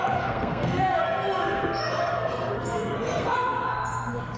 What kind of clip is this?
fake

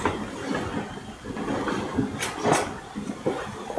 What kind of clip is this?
real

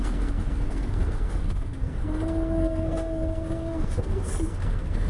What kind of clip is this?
fake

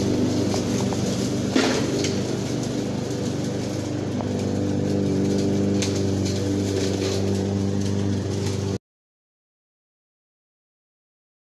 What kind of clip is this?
real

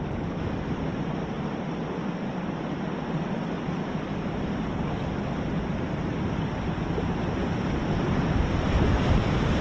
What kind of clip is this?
real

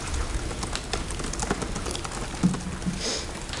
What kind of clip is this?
real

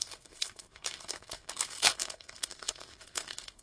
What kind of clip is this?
fake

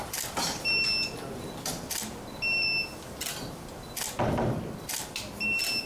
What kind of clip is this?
real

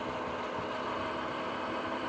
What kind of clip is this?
real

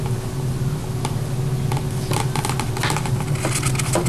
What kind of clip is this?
real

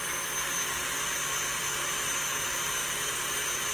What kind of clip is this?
real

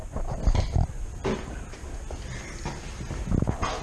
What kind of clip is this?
real